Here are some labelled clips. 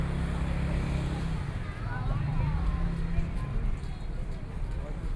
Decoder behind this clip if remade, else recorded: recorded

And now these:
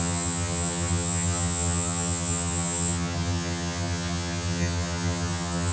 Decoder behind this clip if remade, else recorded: remade, vocoder, HiFi-GAN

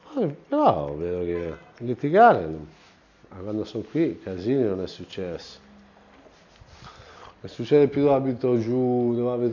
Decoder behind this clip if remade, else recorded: recorded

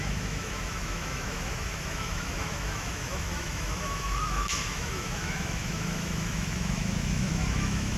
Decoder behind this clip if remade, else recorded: remade, autoencoder, DAC-VAE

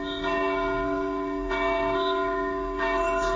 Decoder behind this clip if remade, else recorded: remade, codec, SNAC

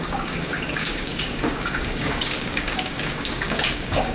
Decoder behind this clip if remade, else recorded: remade, codec, DAC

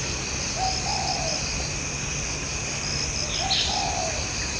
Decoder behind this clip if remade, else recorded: recorded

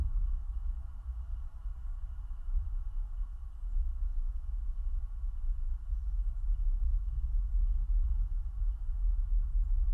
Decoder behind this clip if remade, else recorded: recorded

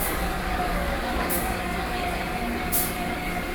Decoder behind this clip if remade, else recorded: remade, codec, DAC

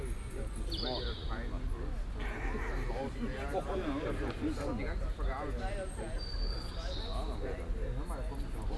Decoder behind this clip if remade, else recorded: recorded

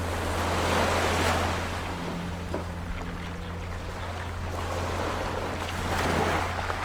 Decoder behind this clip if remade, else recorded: recorded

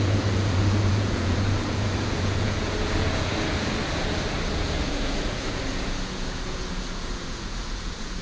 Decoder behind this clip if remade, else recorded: remade, vocoder, Vocos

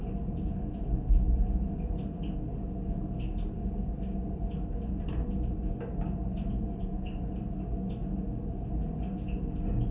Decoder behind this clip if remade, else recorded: recorded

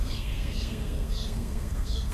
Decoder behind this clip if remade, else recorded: remade, codec, SNAC